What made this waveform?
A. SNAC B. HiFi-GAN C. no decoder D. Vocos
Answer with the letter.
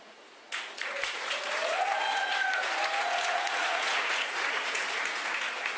D